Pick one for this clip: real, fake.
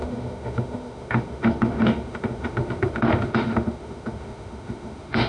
fake